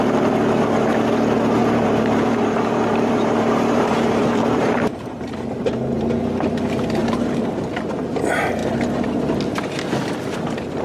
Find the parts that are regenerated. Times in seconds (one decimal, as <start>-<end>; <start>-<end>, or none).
1.6-5.3; 7.0-8.1